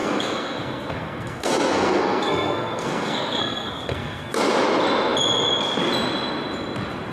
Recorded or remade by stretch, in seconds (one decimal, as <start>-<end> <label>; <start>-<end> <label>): 0.0-4.3 remade; 4.3-7.1 recorded